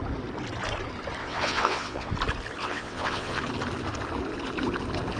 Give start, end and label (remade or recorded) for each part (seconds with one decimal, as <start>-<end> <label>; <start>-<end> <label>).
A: 0.0-1.2 recorded; 1.2-2.1 remade; 2.1-2.6 recorded; 2.6-3.4 remade; 3.4-5.2 recorded